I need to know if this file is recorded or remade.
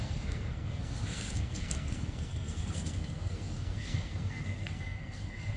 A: remade